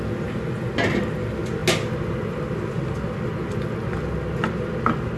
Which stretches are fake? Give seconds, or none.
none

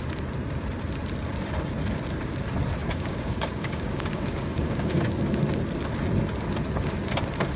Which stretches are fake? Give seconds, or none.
2.8-5.1 (codec, DAC)

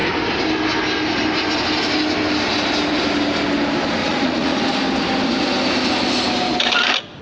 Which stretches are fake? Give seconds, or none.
4.0-4.6 (vocoder, Vocos)

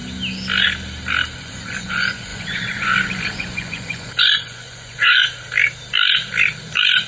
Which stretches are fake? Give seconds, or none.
1.4-5.2 (vocoder, Vocos)

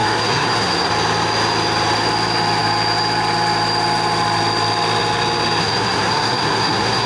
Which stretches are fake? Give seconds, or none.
0.0-0.9 (codec, SNAC); 5.6-7.1

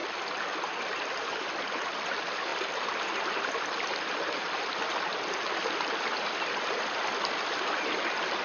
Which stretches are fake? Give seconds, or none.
none